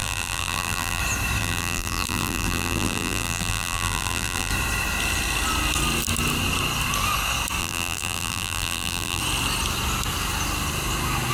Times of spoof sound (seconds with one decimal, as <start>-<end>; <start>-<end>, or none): 0.0-1.0; 1.4-4.5; 7.6-9.2